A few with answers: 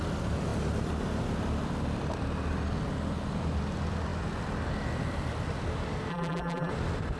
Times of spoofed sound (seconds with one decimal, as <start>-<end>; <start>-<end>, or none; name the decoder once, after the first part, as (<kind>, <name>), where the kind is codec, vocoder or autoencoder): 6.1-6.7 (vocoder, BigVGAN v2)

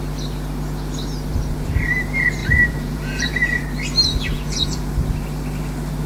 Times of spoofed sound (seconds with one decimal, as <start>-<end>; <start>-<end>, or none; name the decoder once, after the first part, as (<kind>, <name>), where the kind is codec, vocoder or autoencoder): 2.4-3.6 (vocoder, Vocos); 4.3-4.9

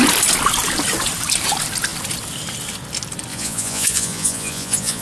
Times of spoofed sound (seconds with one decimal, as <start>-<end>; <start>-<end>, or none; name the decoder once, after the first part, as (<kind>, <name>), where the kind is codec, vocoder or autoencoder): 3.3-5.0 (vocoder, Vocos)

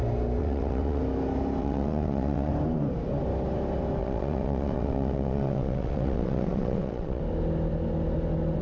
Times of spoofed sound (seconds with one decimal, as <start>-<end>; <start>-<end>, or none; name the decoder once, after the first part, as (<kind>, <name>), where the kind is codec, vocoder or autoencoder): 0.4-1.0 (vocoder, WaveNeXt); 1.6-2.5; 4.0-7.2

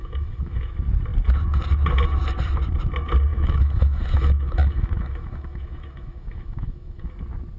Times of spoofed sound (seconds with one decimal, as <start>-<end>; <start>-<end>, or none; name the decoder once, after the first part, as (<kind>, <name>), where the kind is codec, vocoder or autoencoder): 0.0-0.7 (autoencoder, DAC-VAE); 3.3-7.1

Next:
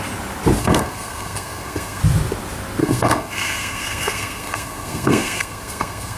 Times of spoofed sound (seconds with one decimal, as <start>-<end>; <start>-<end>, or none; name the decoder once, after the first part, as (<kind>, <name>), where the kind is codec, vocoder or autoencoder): 0.6-2.0 (codec, SNAC); 2.8-6.2